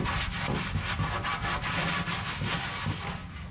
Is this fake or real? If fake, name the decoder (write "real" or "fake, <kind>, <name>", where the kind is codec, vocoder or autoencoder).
real